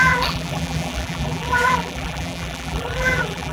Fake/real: fake